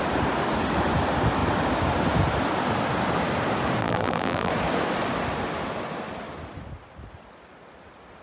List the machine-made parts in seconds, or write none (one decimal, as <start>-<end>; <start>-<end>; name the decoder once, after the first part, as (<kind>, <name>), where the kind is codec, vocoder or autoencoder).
3.8-4.5 (vocoder, BigVGAN v2)